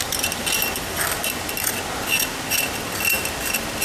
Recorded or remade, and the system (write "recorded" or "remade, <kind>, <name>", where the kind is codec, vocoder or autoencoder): recorded